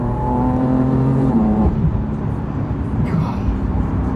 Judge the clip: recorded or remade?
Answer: remade